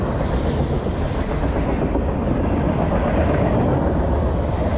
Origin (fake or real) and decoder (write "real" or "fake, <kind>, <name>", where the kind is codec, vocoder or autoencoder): real